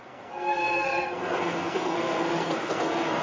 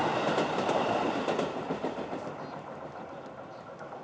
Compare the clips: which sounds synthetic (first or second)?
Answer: first